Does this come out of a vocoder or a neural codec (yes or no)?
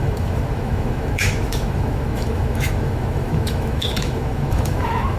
yes